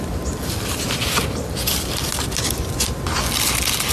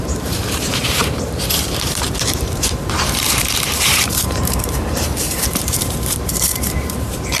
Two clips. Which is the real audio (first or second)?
first